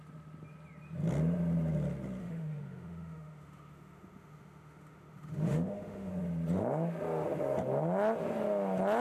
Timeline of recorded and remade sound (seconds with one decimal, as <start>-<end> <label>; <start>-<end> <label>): 0.0-2.2 recorded; 2.2-6.1 remade; 6.1-9.0 recorded